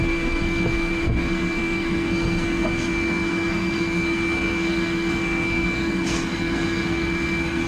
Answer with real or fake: fake